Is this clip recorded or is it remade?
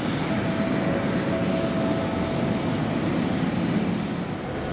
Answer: recorded